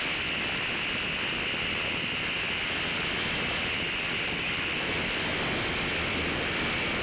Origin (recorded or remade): recorded